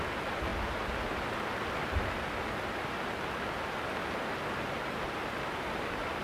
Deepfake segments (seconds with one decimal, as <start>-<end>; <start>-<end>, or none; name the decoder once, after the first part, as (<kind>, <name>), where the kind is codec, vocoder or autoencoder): none